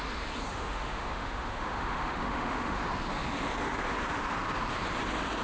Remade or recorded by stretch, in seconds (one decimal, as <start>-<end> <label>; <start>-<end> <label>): 0.0-0.5 recorded; 0.5-2.8 remade; 2.8-5.4 recorded